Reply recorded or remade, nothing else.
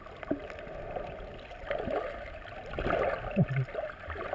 recorded